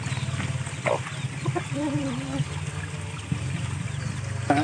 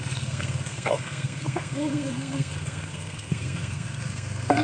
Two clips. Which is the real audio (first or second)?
first